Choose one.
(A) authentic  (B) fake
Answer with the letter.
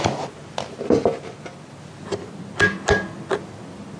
A